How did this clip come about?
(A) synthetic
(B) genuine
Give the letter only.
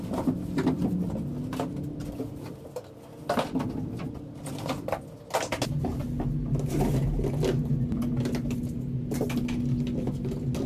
B